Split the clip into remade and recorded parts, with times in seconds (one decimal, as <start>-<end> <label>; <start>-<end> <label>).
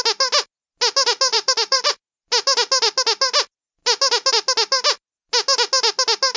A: 0.0-1.3 recorded; 1.3-1.9 remade; 1.9-6.4 recorded